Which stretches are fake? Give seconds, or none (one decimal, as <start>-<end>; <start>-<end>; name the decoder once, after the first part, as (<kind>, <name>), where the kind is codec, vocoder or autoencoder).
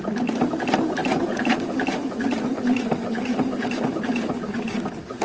none